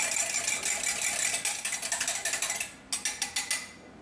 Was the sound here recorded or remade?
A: recorded